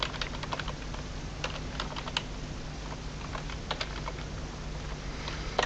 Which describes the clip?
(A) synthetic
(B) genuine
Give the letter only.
B